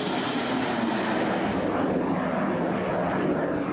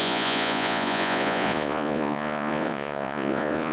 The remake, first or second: second